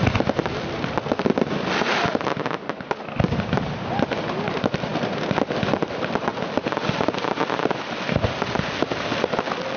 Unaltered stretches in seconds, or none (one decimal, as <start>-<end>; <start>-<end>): 0.0-9.8